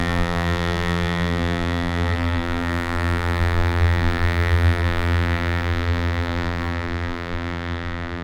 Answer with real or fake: fake